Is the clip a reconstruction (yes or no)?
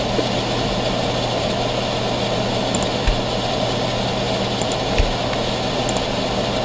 no